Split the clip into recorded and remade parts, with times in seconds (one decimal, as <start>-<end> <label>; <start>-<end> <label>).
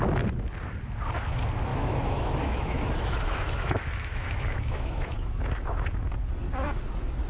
0.0-1.7 recorded; 1.7-6.1 remade; 6.1-7.3 recorded